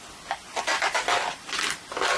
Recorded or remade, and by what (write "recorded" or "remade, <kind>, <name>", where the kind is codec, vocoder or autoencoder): recorded